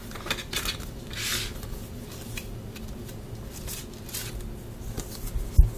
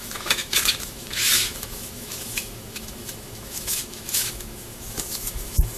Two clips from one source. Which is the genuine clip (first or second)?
first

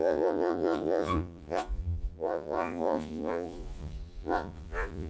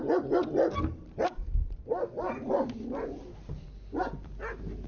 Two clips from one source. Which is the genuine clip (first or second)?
second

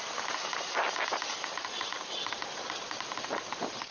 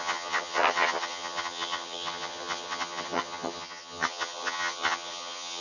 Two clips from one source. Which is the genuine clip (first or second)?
first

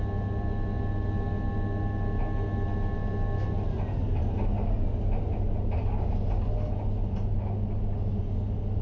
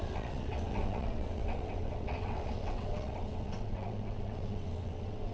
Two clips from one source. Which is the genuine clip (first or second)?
first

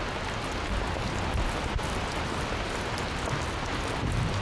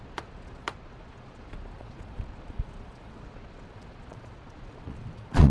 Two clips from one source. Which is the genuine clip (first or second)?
first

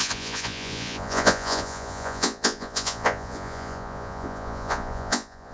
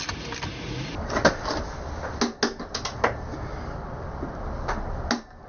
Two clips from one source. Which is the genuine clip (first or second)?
second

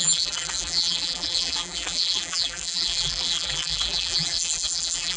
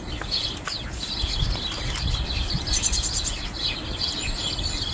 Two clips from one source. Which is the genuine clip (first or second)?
second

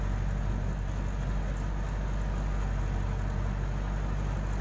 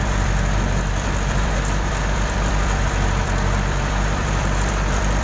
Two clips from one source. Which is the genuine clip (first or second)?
first